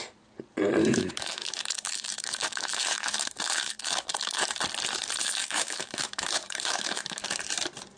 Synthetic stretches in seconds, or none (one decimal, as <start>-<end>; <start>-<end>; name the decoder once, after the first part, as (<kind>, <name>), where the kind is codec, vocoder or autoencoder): 0.8-4.6 (autoencoder, DAC-VAE); 5.2-7.2